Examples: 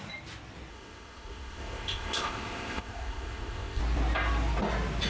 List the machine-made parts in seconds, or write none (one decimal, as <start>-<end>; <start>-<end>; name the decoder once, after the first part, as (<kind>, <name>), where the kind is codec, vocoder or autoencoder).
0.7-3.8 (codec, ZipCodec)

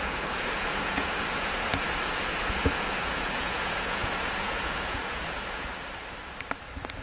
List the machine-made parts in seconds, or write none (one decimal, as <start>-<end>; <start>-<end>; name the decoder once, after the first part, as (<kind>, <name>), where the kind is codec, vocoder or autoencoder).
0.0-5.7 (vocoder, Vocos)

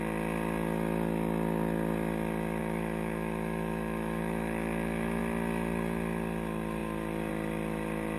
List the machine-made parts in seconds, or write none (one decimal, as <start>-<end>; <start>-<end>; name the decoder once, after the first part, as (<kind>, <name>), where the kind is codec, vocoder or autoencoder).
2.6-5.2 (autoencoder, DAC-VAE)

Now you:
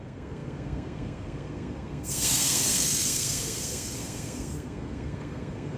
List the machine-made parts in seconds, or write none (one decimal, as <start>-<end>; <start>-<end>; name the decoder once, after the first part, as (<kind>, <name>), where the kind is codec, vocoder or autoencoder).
0.0-5.8 (codec, SNAC)